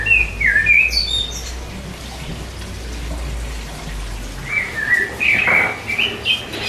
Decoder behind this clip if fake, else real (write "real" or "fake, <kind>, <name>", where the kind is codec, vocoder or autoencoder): real